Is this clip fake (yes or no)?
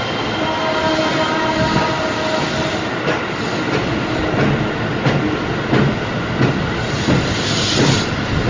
no